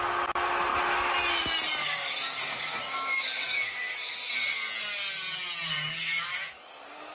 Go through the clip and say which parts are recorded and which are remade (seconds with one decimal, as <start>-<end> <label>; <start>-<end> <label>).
0.0-1.8 recorded; 1.8-4.3 remade; 4.3-6.0 recorded; 6.0-7.1 remade